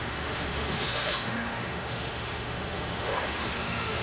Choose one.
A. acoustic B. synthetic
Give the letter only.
B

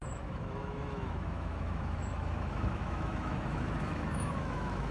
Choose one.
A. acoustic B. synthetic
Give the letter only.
B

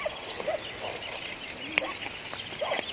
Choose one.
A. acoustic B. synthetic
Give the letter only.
A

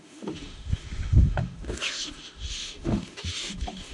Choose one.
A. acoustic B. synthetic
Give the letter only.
B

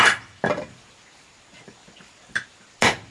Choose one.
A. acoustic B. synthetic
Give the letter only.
A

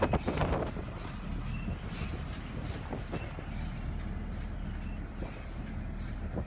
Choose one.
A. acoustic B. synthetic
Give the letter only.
A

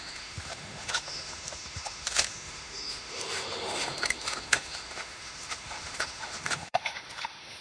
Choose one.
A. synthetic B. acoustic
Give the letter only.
A